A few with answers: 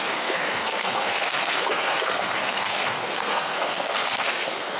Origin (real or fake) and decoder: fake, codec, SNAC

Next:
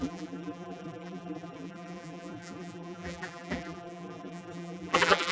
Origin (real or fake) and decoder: fake, vocoder, BigVGAN v2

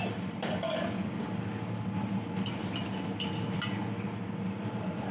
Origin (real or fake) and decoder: fake, vocoder, BigVGAN v2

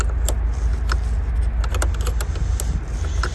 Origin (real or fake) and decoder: real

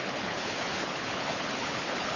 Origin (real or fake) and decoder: fake, codec, HILCodec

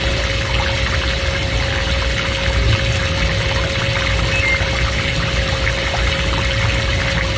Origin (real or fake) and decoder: real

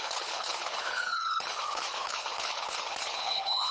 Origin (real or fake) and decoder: fake, codec, HILCodec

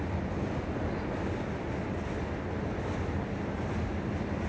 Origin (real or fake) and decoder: real